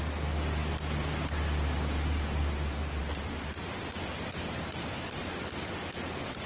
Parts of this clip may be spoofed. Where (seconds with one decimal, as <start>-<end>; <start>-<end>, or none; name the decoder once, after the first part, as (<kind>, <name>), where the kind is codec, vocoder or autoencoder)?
none